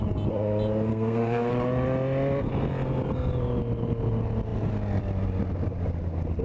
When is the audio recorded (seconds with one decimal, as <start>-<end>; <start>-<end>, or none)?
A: 0.0-0.9; 1.5-6.4